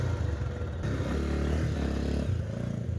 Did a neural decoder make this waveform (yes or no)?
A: no